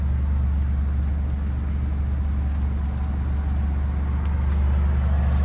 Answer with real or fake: real